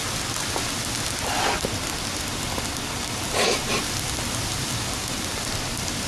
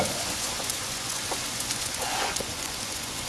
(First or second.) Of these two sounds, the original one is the first